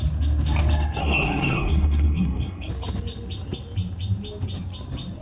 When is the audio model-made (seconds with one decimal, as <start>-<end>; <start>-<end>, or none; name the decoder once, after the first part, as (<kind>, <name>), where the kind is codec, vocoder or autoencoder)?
1.0-2.7 (codec, SNAC)